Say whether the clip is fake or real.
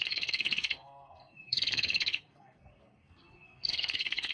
fake